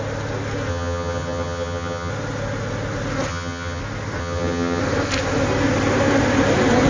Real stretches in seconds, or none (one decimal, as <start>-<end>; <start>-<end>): 0.0-0.7; 2.1-3.3; 3.8-4.2; 4.8-6.9